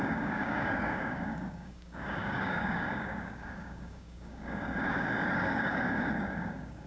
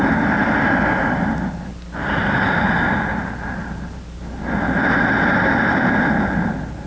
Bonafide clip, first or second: second